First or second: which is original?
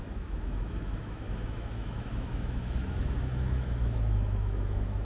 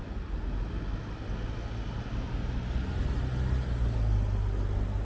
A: second